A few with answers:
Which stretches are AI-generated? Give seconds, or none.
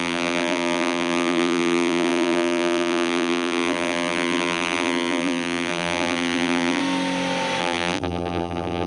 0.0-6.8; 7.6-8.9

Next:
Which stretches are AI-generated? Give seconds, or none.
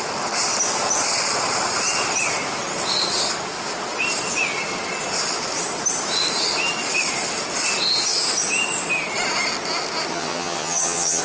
10.1-11.2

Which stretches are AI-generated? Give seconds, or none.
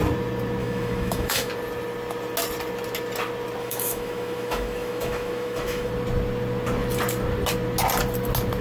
0.6-1.5; 3.6-5.9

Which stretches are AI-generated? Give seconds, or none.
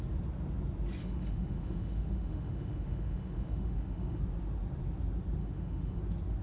1.0-4.2; 5.4-6.0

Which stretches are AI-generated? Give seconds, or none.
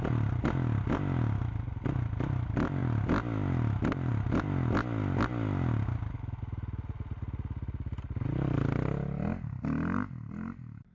none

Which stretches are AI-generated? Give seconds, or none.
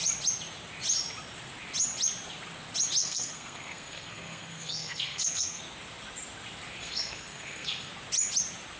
3.0-5.6; 6.8-7.9